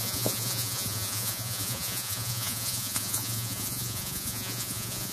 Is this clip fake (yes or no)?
yes